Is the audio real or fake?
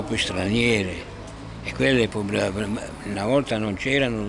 real